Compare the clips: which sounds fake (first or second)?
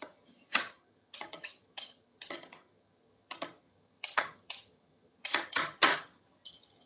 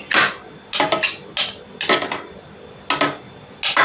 first